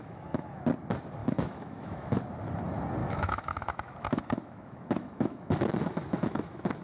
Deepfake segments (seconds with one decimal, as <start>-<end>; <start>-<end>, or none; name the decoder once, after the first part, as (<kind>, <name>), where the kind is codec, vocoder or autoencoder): 0.0-0.6 (autoencoder, DAC-VAE); 1.2-2.2; 3.0-6.8

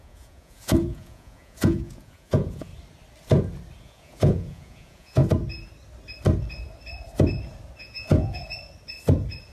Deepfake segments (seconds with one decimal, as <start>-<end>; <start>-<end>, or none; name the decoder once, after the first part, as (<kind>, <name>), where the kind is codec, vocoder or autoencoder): 0.0-2.7 (vocoder, Vocos); 3.8-5.2; 7.8-8.4

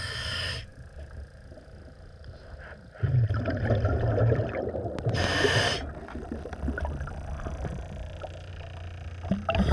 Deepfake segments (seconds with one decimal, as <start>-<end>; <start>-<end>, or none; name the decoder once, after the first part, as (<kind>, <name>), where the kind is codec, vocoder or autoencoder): none

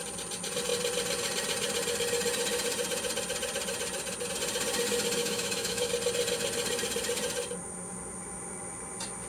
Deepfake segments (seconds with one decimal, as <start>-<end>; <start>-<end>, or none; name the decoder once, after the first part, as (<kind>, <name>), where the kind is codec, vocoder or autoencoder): 5.2-5.9 (autoencoder, DAC-VAE)

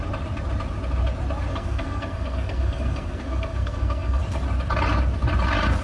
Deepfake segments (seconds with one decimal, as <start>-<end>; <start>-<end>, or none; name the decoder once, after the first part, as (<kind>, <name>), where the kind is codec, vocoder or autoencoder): 1.5-4.2 (codec, SNAC)

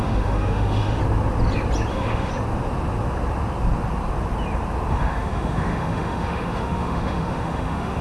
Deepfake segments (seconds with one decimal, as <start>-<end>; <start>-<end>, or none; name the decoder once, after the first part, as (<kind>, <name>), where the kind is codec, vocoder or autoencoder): 0.0-1.0 (autoencoder, DAC-VAE); 1.9-2.3; 4.9-8.0